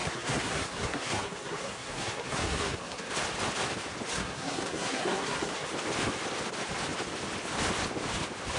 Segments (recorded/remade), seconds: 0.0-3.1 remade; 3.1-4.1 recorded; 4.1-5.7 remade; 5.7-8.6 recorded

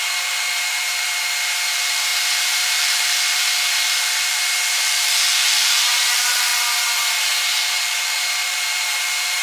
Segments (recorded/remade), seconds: 0.0-6.5 remade; 6.5-7.2 recorded; 7.2-9.4 remade